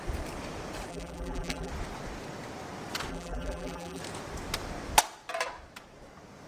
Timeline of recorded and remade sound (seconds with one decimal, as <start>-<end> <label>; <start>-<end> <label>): 0.0-0.9 recorded; 0.9-1.7 remade; 1.7-3.1 recorded; 3.1-4.0 remade; 4.0-6.5 recorded